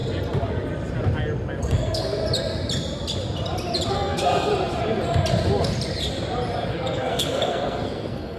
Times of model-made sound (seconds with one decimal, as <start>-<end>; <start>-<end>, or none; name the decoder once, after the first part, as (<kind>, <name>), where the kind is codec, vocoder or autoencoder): 1.6-2.2 (codec, SNAC); 3.9-4.5; 6.7-8.4